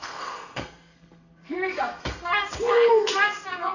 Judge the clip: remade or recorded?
remade